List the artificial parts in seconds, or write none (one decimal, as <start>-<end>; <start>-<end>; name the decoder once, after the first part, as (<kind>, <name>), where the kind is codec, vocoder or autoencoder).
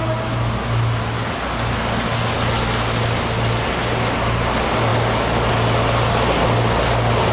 none